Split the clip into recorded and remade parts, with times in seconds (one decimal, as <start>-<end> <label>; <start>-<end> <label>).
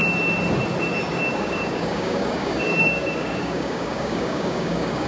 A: 0.0-1.1 recorded; 1.1-5.1 remade